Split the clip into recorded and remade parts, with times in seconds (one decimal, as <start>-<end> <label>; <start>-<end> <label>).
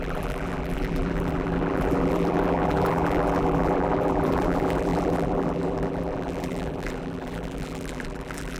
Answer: 0.0-8.6 remade